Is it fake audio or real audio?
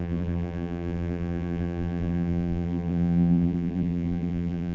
fake